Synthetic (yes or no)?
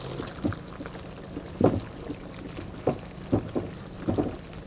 no